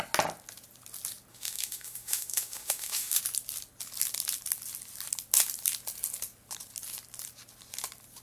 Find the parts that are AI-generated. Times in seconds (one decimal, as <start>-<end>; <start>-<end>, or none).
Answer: 1.3-3.2